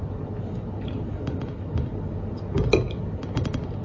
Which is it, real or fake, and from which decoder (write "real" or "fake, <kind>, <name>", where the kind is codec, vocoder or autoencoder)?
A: real